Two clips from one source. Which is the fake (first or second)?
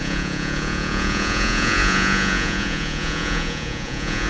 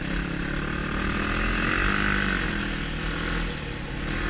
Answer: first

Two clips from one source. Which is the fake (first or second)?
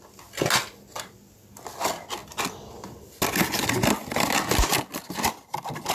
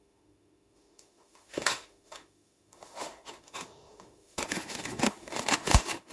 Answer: second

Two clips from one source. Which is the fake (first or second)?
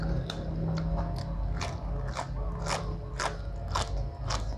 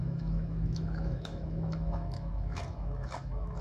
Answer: second